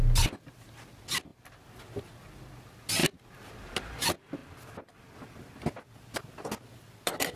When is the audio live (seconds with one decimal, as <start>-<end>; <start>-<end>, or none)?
0.0-7.4